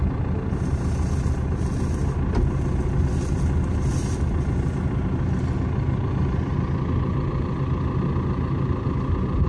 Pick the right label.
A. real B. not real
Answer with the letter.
A